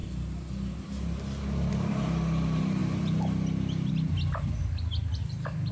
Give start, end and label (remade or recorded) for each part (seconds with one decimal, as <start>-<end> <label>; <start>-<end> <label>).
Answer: 0.0-5.7 recorded

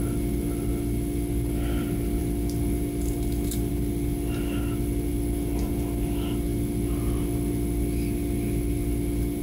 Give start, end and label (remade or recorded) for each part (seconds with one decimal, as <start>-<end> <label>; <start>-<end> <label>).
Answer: 0.0-9.4 recorded